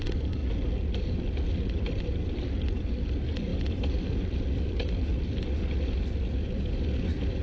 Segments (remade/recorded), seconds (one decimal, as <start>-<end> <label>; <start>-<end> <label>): 0.0-0.4 remade; 0.4-1.0 recorded; 1.0-7.4 remade